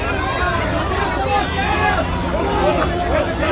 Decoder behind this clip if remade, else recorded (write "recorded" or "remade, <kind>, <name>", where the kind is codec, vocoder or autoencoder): recorded